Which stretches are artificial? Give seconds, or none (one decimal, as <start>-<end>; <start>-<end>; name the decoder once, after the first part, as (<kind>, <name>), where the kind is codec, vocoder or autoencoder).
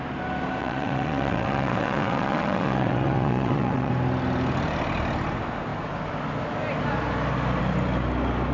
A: 0.6-3.9 (vocoder, WaveNeXt)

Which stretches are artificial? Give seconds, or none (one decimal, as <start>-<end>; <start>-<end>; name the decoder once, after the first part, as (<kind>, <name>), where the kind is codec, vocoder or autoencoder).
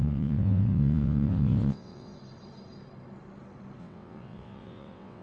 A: 0.0-2.1 (vocoder, WaveNeXt); 3.8-5.2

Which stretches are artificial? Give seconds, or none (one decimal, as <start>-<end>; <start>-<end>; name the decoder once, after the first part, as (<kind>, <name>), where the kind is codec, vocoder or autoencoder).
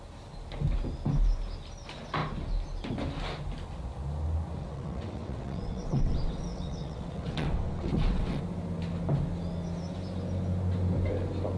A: 4.6-8.4 (vocoder, WaveNeXt)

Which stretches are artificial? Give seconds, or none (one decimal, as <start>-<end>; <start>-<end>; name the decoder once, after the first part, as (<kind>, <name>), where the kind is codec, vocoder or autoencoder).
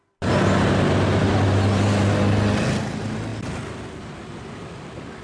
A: none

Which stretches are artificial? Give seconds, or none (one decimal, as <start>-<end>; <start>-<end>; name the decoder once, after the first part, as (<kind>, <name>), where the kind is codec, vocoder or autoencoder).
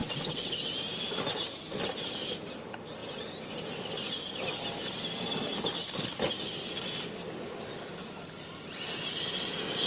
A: 0.0-0.7 (vocoder, WaveNeXt)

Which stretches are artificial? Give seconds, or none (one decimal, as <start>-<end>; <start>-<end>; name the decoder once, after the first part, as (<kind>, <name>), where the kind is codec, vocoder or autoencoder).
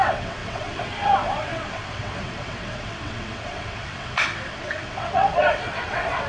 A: 0.0-6.3 (vocoder, WaveNeXt)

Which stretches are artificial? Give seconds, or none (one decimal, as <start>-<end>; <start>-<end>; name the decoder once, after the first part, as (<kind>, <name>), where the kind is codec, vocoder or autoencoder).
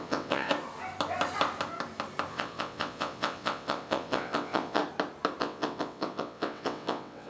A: 0.0-0.5 (vocoder, WaveNeXt); 2.3-4.8; 5.4-7.3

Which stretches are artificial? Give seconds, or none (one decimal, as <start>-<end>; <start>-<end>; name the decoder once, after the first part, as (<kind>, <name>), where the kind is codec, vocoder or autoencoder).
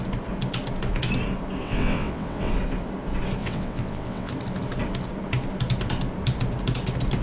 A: 1.6-2.5 (vocoder, WaveNeXt); 3.4-4.3